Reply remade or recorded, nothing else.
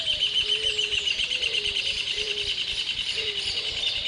remade